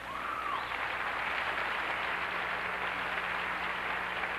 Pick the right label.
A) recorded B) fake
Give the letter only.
A